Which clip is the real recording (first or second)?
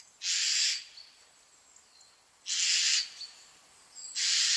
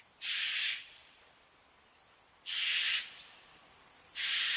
first